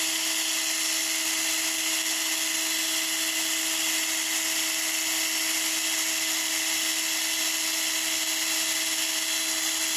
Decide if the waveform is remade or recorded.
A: recorded